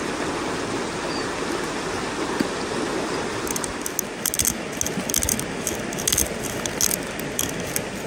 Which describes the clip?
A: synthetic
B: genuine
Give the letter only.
B